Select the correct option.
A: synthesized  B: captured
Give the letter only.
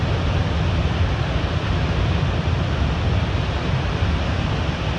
B